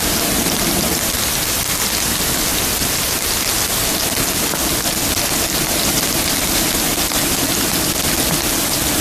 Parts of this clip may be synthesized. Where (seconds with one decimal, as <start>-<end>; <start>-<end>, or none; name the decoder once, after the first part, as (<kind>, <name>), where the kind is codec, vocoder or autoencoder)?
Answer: 5.6-7.0 (vocoder, BigVGAN v2)